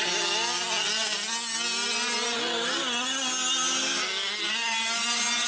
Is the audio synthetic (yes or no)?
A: no